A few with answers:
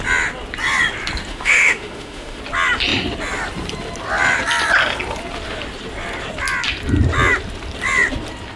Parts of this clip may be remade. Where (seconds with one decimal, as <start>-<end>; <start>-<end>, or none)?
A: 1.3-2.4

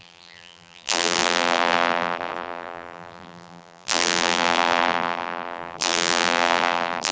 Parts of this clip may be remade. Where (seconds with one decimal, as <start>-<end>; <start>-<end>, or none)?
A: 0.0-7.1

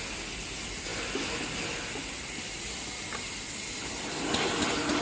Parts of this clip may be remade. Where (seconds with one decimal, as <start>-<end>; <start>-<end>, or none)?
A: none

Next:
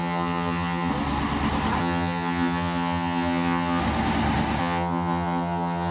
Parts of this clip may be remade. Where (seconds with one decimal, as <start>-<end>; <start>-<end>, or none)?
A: 0.0-0.9; 1.8-3.8; 4.6-5.9